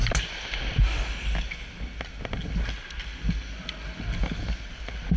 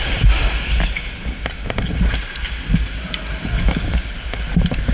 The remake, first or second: second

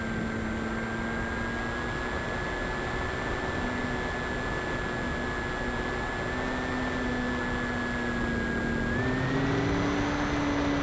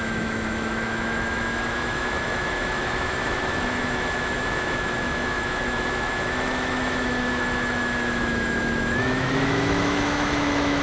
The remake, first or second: second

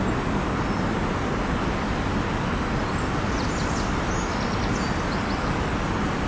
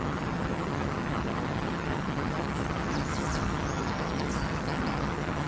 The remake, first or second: second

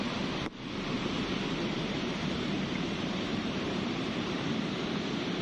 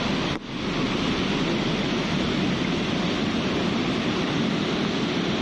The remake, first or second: first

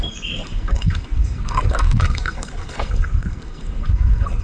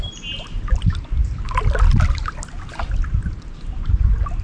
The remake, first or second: first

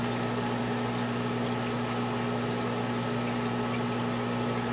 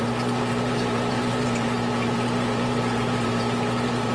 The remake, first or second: second